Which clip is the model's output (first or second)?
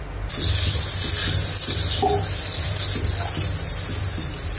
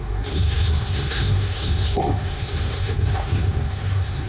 second